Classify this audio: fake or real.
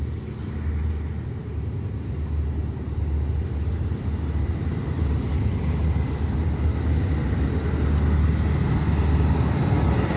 real